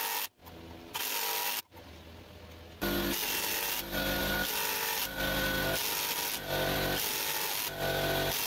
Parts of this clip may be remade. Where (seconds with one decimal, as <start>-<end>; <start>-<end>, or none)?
none